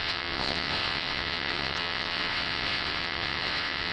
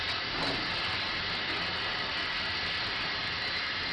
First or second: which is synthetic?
first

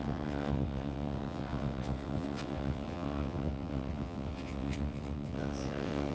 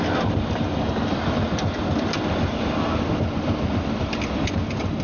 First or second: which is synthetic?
first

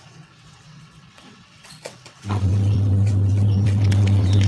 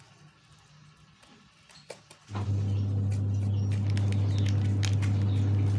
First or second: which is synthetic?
first